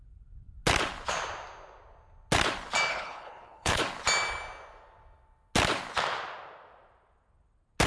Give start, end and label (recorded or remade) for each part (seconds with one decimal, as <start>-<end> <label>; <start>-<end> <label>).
0.0-2.9 recorded; 2.9-3.8 remade; 3.8-7.9 recorded